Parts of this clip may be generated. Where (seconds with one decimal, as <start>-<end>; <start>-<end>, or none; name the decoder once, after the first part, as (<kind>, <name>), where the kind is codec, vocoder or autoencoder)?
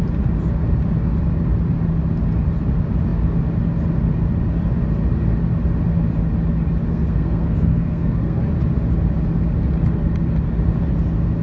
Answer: 6.9-8.4 (codec, SNAC)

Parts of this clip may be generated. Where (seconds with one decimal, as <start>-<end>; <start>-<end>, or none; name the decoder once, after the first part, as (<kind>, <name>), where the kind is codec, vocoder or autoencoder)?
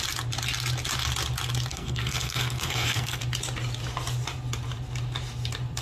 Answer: 1.7-3.2 (codec, SNAC)